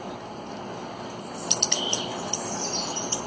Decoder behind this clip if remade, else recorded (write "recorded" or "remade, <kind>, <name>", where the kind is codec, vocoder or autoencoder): recorded